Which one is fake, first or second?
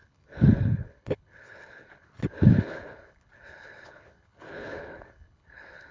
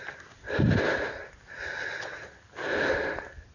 first